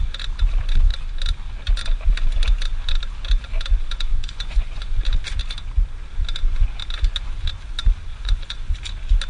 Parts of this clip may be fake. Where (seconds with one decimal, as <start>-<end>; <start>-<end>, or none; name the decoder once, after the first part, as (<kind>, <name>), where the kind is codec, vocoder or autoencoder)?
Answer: 4.1-5.0 (vocoder, Vocos); 8.1-8.7